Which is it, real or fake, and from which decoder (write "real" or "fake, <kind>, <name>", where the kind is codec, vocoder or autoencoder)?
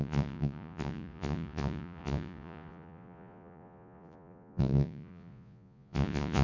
fake, vocoder, Vocos